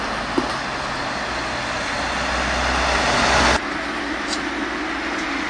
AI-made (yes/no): no